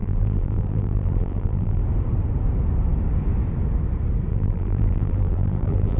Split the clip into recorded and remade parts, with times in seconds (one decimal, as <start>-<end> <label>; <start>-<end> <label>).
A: 0.0-1.8 remade; 1.8-4.3 recorded; 4.3-6.0 remade